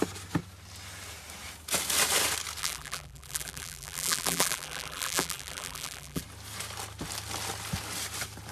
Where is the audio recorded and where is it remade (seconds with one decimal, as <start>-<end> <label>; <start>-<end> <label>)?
0.0-2.6 recorded; 2.6-6.2 remade; 6.2-8.5 recorded